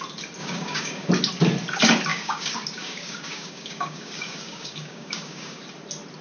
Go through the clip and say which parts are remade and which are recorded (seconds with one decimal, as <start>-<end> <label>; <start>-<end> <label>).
0.0-0.4 recorded; 0.4-1.1 remade; 1.1-2.1 recorded; 2.1-5.6 remade; 5.6-6.2 recorded